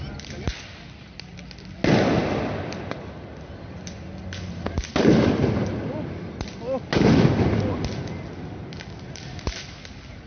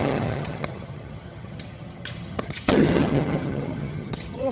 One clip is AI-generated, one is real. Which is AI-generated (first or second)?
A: second